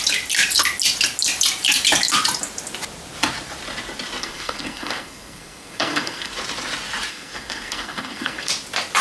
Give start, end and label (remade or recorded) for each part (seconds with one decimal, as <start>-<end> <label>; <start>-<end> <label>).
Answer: 0.0-4.2 recorded; 4.2-6.3 remade; 6.3-7.1 recorded; 7.1-8.5 remade; 8.5-9.0 recorded